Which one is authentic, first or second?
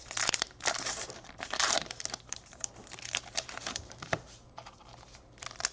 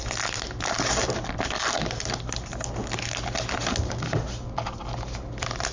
second